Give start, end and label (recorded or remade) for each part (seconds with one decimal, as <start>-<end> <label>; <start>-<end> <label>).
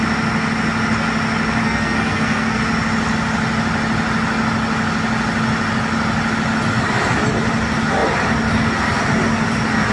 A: 0.0-1.6 recorded; 1.6-2.6 remade; 2.6-9.9 recorded